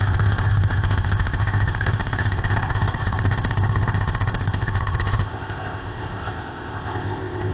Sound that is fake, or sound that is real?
fake